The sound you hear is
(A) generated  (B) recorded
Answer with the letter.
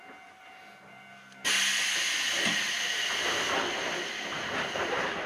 B